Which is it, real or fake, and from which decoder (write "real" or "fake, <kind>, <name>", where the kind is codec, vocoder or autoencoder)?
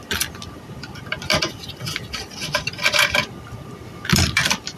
fake, vocoder, BigVGAN v2